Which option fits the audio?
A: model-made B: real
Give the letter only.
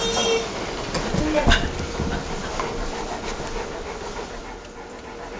B